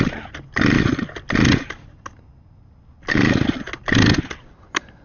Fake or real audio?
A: real